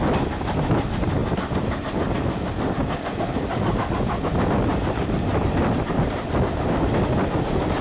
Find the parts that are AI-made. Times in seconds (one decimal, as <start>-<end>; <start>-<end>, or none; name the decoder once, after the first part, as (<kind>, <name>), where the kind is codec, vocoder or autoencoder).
none